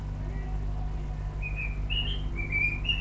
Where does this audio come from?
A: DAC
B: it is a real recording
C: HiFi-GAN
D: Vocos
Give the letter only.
B